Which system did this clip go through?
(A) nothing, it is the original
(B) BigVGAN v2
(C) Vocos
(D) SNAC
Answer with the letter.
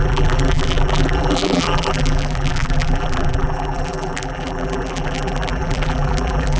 B